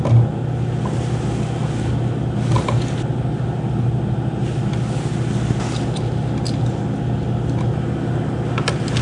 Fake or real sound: real